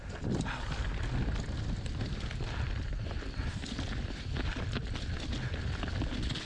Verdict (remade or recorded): recorded